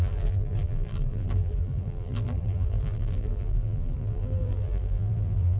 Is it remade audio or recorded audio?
remade